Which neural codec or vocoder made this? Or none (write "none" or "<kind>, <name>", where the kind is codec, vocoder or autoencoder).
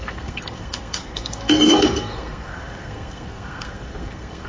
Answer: codec, SNAC